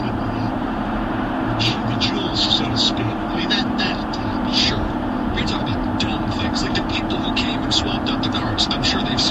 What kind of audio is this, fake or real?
fake